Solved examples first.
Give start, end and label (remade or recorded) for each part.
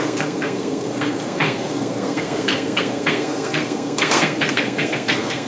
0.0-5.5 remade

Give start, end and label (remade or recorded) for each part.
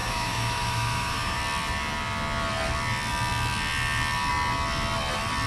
0.0-1.4 remade; 1.4-5.5 recorded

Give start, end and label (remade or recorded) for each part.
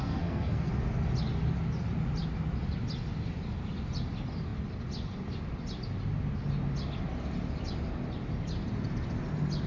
0.0-0.7 remade; 0.7-9.7 recorded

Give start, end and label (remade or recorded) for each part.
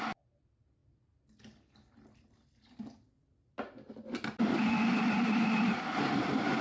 0.0-6.6 recorded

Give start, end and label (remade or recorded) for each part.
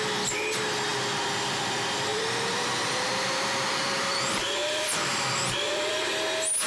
0.0-2.1 recorded; 2.1-6.1 remade; 6.1-6.7 recorded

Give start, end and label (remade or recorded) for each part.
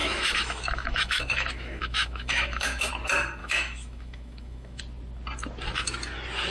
0.0-2.9 remade; 2.9-3.4 recorded; 3.4-4.8 remade; 4.8-6.5 recorded